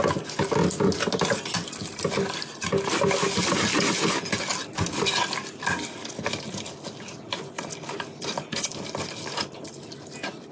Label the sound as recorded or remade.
recorded